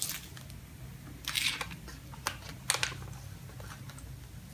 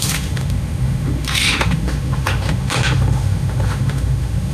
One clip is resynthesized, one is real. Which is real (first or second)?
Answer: first